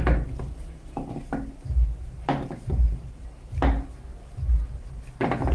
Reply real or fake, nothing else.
real